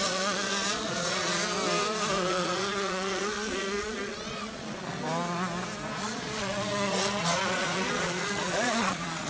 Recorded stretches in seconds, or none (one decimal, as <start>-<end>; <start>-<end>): 1.4-2.3; 5.0-6.0